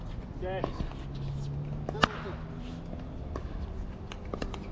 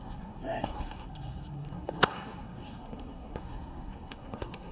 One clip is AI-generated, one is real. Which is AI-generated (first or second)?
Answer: second